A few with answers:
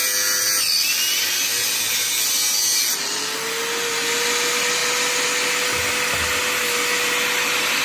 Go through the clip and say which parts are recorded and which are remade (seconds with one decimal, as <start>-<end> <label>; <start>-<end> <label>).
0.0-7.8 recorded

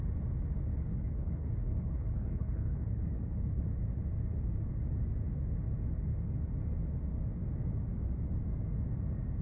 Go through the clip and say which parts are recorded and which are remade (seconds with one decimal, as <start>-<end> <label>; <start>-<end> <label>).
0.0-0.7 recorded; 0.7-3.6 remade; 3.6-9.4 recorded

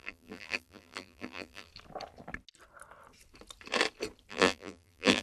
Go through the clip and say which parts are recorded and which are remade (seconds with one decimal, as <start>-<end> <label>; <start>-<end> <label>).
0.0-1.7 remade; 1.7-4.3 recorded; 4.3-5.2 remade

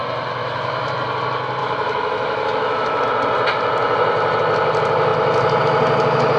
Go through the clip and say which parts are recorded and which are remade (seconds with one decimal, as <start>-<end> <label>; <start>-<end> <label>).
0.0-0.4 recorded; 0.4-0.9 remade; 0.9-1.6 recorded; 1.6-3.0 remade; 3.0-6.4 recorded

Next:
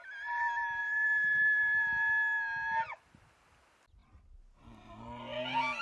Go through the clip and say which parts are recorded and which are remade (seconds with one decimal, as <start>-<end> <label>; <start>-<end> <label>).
0.0-5.8 recorded

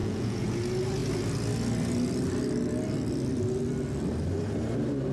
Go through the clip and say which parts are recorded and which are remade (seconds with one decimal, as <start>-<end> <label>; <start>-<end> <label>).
0.0-0.6 remade; 0.6-5.1 recorded

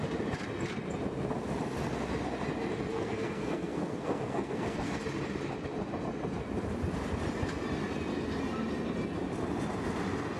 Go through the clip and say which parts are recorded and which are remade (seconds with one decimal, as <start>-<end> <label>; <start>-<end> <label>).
0.0-2.9 recorded; 2.9-5.0 remade; 5.0-10.4 recorded